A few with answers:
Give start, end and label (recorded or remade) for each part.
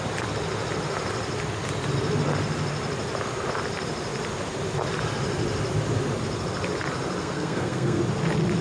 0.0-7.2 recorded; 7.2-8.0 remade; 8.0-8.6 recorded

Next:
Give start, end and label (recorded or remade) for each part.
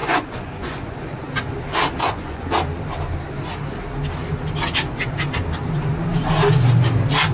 0.0-1.2 remade; 1.2-2.0 recorded; 2.0-2.5 remade; 2.5-7.3 recorded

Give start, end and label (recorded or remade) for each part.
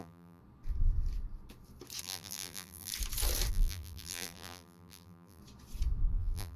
0.0-0.4 remade; 0.4-2.0 recorded; 2.0-2.9 remade; 2.9-3.5 recorded; 3.5-5.4 remade; 5.4-6.1 recorded; 6.1-6.6 remade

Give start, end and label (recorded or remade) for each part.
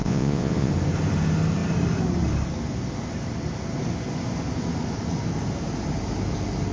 0.0-0.7 remade; 0.7-6.7 recorded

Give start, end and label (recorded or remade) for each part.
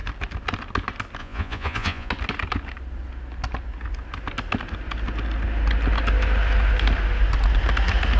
0.0-1.2 recorded; 1.2-2.1 remade; 2.1-8.2 recorded